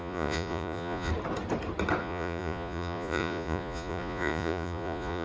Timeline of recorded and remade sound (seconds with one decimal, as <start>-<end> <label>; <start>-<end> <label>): 0.0-1.1 remade; 1.1-2.0 recorded; 2.0-5.2 remade